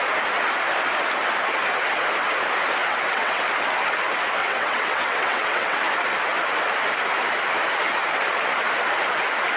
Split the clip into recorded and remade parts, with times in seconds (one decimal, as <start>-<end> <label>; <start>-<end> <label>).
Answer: 0.0-2.8 recorded; 2.8-3.4 remade; 3.4-4.4 recorded; 4.4-5.8 remade; 5.8-9.6 recorded

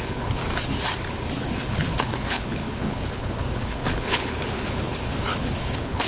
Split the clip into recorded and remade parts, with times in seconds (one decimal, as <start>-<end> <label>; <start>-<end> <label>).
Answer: 0.0-0.4 remade; 0.4-1.3 recorded; 1.3-6.1 remade